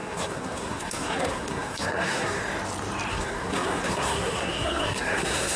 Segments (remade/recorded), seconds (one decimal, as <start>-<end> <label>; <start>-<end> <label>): 0.0-2.4 remade; 2.4-3.1 recorded; 3.1-5.6 remade